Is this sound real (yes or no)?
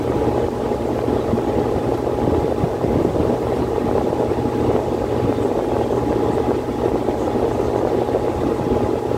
yes